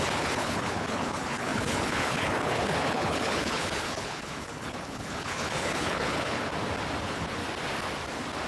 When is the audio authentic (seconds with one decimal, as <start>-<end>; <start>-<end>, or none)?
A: 6.5-7.0; 7.4-8.5

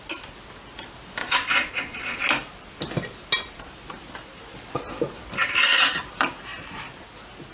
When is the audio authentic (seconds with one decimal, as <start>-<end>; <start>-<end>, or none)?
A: 0.0-1.2; 2.2-7.5